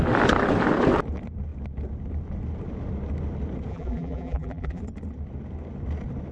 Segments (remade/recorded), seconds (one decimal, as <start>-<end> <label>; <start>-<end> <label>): 0.0-3.7 recorded; 3.7-4.8 remade; 4.8-6.3 recorded